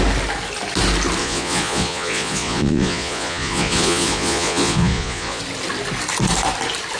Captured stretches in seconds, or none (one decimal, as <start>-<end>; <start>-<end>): 0.0-1.2; 5.4-7.0